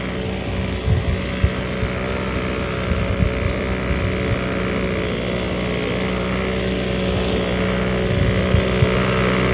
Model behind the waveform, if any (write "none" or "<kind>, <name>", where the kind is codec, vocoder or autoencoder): none